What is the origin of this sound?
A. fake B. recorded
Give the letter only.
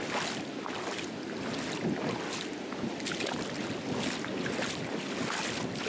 B